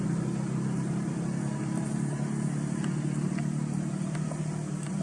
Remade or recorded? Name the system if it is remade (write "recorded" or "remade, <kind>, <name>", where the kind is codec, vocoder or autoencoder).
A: recorded